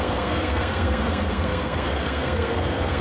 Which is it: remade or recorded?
remade